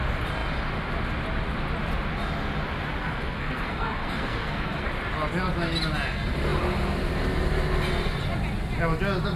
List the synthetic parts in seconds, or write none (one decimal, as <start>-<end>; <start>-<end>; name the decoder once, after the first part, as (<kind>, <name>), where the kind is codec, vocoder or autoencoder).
3.0-4.9 (codec, SNAC)